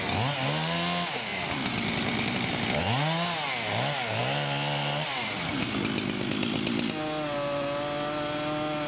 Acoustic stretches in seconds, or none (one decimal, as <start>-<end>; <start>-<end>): 0.0-4.2; 5.5-8.9